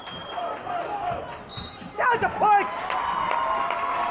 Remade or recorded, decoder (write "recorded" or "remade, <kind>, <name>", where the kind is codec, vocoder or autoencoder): recorded